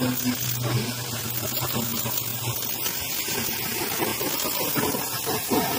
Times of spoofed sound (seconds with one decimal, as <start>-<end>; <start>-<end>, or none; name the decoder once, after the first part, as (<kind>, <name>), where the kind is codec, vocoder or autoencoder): none